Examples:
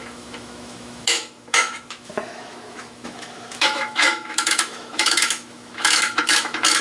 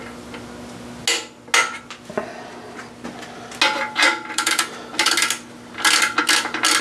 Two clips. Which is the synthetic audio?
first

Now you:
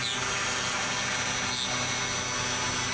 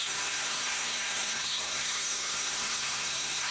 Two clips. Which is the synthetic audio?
second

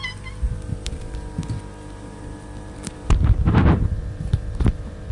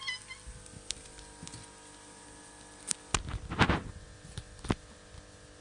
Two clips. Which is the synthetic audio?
first